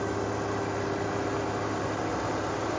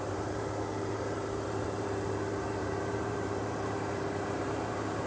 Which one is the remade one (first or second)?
second